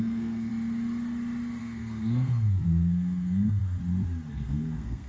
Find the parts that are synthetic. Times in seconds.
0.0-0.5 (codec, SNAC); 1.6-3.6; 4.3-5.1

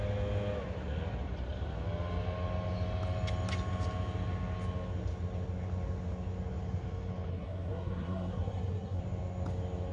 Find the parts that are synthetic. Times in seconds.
7.3-9.0 (codec, SNAC)

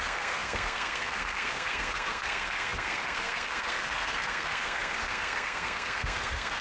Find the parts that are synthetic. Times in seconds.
0.0-6.6 (codec, SNAC)